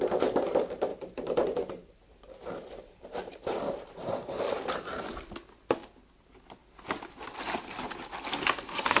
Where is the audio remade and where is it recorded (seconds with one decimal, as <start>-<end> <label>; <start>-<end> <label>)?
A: 0.0-0.9 recorded; 0.9-4.4 remade; 4.4-9.0 recorded